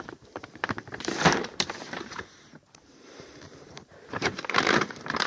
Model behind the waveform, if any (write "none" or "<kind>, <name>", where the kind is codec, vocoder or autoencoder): vocoder, BigVGAN v2